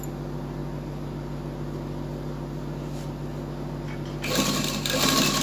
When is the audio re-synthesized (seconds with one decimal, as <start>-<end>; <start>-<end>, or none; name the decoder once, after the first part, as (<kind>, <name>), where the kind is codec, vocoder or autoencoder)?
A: none